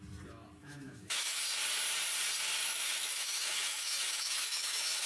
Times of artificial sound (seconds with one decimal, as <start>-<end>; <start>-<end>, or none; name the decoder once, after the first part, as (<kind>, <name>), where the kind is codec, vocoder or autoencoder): 0.6-1.4 (autoencoder, DAC-VAE); 2.6-5.1